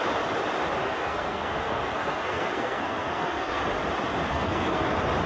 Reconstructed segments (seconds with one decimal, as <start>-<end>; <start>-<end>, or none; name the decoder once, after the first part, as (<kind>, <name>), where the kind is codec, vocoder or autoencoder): 0.8-3.6 (codec, SNAC); 4.3-4.8